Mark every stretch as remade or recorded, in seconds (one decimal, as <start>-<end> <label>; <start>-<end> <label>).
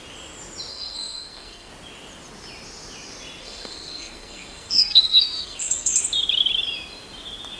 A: 0.0-0.7 recorded; 0.7-1.7 remade; 1.7-3.4 recorded; 3.4-6.0 remade; 6.0-7.6 recorded